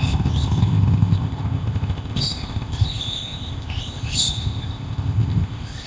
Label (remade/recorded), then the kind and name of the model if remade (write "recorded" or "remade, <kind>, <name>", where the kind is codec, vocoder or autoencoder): remade, codec, ZipCodec